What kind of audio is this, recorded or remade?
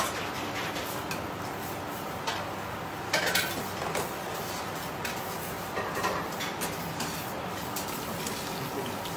recorded